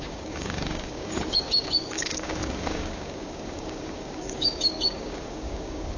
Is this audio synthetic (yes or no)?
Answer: yes